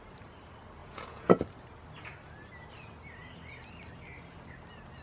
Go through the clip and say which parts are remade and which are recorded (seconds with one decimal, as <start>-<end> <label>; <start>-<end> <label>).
0.0-0.8 recorded; 0.8-1.4 remade; 1.4-5.0 recorded